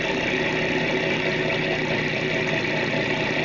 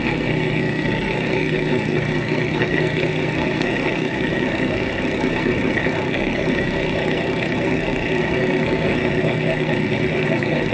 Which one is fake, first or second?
second